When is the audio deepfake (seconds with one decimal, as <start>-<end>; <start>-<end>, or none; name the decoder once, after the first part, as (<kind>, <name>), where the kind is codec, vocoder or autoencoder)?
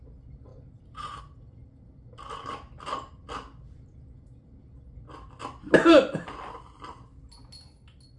0.5-1.2 (vocoder, BigVGAN v2)